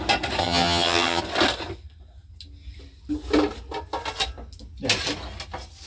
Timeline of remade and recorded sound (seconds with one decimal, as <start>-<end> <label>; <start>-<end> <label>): 0.0-0.4 recorded; 0.4-1.2 remade; 1.2-5.9 recorded